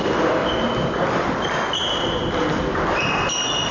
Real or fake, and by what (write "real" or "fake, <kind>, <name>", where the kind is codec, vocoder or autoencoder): real